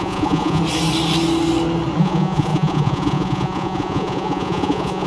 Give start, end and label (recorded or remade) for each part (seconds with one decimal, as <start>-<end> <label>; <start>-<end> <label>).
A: 0.0-0.6 remade; 0.6-2.0 recorded; 2.0-5.1 remade